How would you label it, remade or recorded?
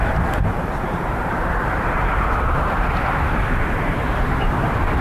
remade